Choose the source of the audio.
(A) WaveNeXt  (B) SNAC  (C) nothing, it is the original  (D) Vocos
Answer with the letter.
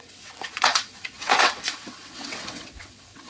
A